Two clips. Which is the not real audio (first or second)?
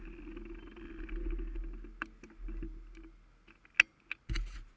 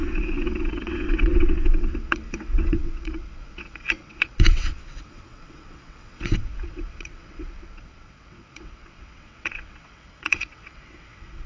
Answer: second